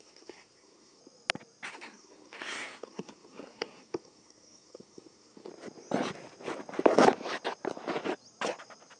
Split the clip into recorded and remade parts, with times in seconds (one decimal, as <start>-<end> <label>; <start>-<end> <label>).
0.0-1.0 remade; 1.0-1.7 recorded; 1.7-5.5 remade; 5.5-9.0 recorded